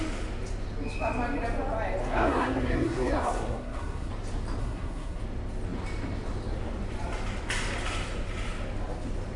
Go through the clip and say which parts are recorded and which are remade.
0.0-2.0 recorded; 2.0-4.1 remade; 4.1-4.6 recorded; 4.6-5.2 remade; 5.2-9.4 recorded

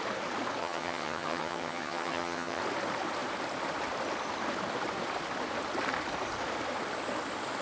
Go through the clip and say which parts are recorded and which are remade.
0.0-0.6 recorded; 0.6-2.6 remade; 2.6-7.6 recorded